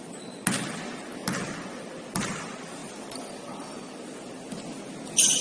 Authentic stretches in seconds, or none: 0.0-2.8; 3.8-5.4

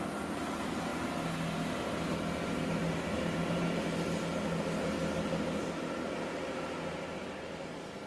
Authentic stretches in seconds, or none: 0.0-8.1

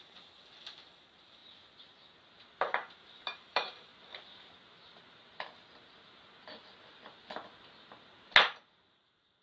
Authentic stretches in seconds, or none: 1.4-3.0; 3.9-8.9

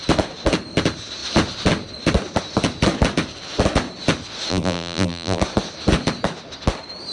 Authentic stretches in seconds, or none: 0.0-4.5; 5.4-7.1

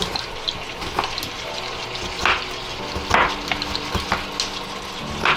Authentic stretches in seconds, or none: 0.0-5.4

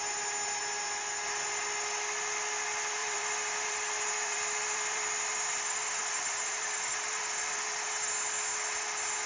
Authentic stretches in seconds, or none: 0.0-3.0; 8.1-9.3

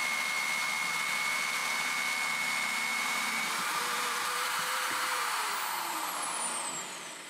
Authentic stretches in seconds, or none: 0.0-2.9; 6.1-7.3

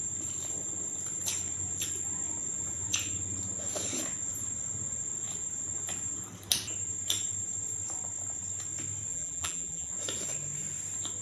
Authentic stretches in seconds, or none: 0.0-9.1; 9.9-11.2